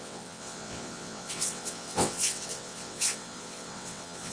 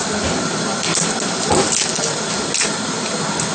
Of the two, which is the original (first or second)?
second